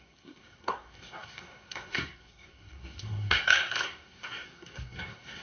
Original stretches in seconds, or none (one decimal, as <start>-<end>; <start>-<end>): none